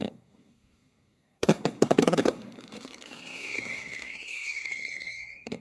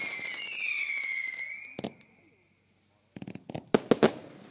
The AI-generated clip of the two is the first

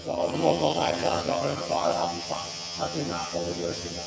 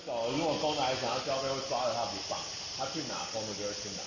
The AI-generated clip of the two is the first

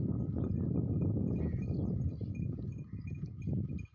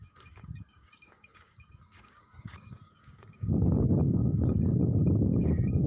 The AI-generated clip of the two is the second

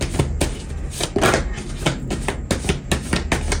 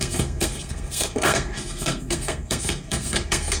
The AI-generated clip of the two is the second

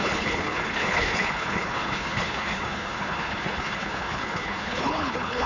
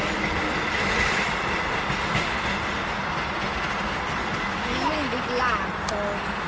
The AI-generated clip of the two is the first